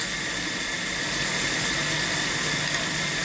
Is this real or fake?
real